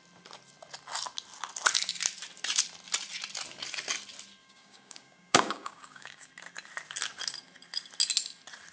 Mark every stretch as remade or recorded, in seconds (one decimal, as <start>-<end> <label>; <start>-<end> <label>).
0.0-4.4 recorded; 4.4-6.3 remade; 6.3-8.7 recorded